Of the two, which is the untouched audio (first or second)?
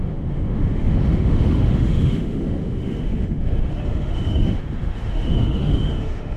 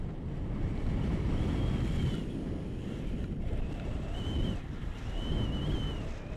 second